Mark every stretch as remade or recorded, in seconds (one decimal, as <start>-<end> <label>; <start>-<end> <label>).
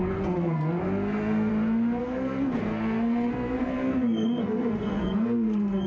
0.0-1.5 remade; 1.5-2.0 recorded; 2.0-5.9 remade